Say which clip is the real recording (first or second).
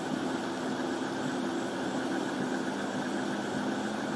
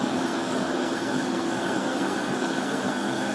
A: first